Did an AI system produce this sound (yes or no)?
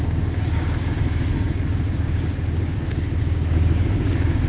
yes